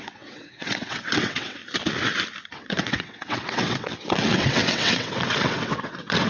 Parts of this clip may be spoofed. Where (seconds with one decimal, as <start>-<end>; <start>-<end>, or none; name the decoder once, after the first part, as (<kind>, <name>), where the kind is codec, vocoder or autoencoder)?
0.0-1.6 (vocoder, WaveNeXt); 2.5-6.3